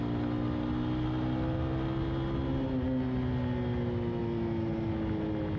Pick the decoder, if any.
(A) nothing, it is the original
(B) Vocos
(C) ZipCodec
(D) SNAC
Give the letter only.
A